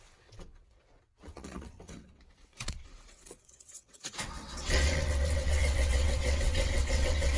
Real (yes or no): no